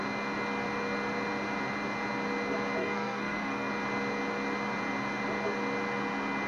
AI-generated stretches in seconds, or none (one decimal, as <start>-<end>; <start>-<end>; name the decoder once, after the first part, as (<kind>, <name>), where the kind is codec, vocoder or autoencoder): 2.8-3.7 (codec, SNAC)